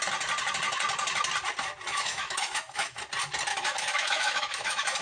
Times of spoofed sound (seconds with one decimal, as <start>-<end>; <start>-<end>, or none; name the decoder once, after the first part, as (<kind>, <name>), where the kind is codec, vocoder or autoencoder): 1.9-3.0 (autoencoder, DAC-VAE); 3.5-5.0